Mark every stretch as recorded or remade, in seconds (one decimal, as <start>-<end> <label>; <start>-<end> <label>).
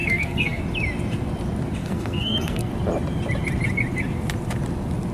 0.0-0.6 remade; 0.6-1.8 recorded; 1.8-2.7 remade; 2.7-5.1 recorded